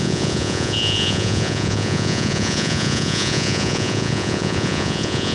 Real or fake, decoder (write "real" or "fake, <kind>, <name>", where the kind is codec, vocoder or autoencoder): fake, vocoder, Vocos